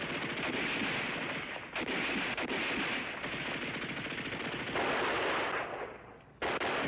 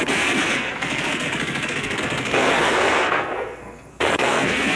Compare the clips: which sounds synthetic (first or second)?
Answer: second